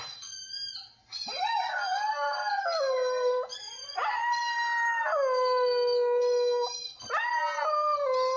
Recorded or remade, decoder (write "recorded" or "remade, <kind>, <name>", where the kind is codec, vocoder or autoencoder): recorded